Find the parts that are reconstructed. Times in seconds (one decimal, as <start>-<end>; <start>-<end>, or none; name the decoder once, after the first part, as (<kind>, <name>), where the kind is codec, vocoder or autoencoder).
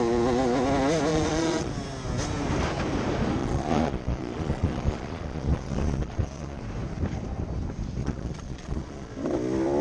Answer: 1.1-1.7 (vocoder, Vocos); 3.4-6.6; 8.0-9.1